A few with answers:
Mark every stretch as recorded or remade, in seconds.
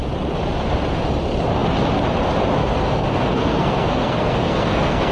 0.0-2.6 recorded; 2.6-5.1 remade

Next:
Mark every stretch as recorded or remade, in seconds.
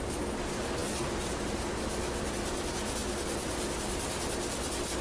0.0-5.0 recorded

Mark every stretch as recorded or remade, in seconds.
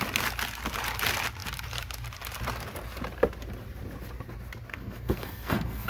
0.0-4.7 recorded; 4.7-5.9 remade